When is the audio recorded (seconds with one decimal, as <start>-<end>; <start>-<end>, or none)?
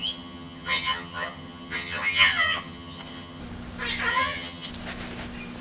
3.4-4.1; 4.7-5.6